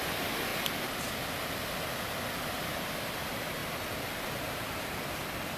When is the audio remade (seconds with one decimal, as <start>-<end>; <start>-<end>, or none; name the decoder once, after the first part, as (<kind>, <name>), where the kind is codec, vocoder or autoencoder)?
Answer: 0.0-0.5 (vocoder, BigVGAN v2); 2.5-3.6